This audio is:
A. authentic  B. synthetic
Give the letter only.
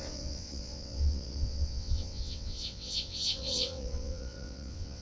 B